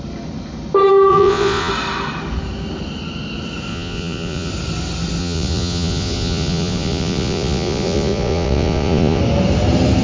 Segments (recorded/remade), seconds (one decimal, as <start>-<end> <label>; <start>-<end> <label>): 0.0-1.1 recorded; 1.1-1.7 remade; 1.7-3.7 recorded; 3.7-4.5 remade; 4.5-5.2 recorded; 5.2-9.2 remade; 9.2-10.0 recorded